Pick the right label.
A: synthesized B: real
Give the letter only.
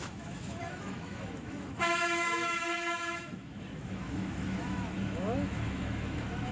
A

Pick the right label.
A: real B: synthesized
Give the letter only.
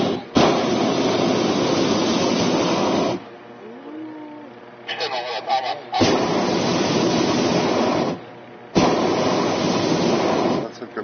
A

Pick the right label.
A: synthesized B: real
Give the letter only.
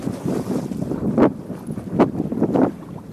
B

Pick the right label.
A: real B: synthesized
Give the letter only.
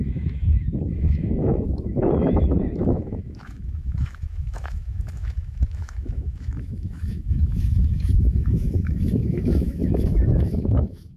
B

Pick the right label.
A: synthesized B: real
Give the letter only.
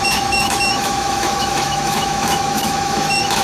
A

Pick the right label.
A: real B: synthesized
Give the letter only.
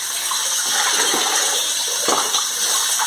A